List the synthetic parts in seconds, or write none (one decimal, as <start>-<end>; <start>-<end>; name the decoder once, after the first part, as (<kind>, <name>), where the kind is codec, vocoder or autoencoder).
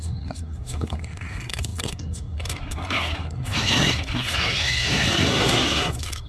0.0-6.3 (codec, SNAC)